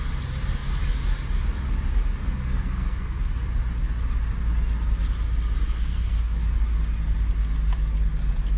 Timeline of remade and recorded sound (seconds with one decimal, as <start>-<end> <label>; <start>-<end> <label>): 0.0-2.2 recorded; 2.2-3.3 remade; 3.3-5.8 recorded; 5.8-6.4 remade; 6.4-8.6 recorded